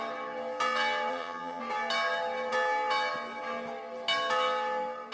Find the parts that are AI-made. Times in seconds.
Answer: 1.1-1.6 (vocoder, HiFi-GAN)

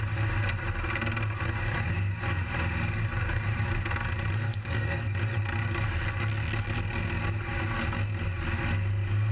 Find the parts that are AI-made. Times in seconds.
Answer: 4.5-5.1 (codec, DAC)

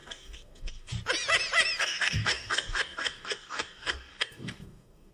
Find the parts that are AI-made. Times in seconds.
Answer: 0.0-0.9 (codec, DAC); 1.8-5.1

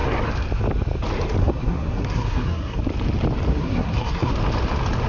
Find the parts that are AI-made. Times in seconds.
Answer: 1.4-2.8 (codec, SNAC); 3.5-4.3

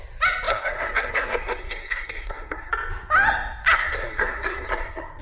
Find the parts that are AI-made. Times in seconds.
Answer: 0.5-2.7 (codec, SNAC); 3.7-5.2